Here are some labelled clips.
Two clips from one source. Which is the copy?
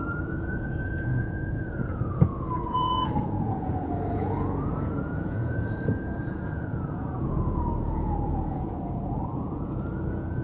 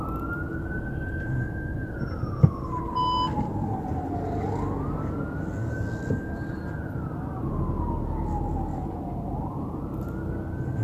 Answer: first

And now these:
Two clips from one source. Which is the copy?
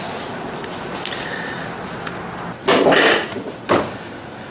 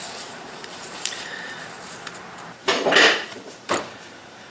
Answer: second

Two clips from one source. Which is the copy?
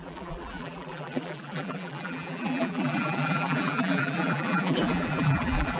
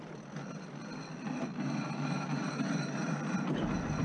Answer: first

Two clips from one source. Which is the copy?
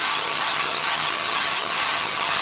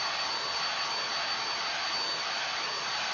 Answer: first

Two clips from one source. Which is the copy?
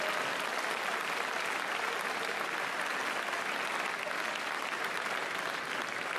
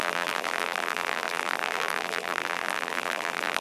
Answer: second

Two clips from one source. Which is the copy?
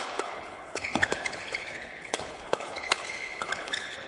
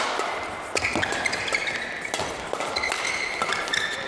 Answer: first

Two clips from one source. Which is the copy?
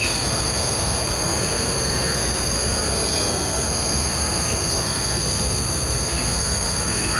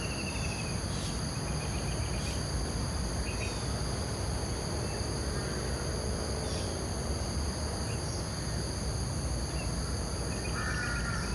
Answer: first